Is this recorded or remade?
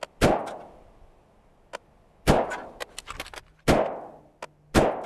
recorded